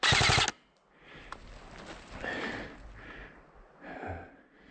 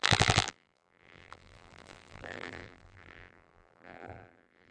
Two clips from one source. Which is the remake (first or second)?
second